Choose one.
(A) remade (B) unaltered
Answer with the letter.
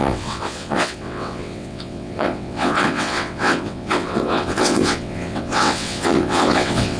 A